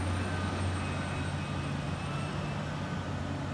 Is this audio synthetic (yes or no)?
no